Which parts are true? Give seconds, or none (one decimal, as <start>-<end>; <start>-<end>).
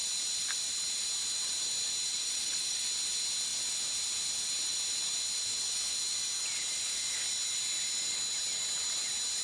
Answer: 0.0-2.1; 2.8-9.4